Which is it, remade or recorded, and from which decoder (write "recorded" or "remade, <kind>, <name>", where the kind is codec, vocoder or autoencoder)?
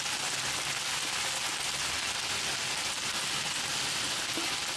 recorded